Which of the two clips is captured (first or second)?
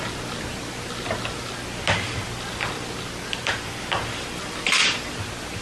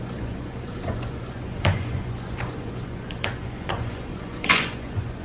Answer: first